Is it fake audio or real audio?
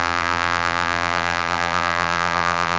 fake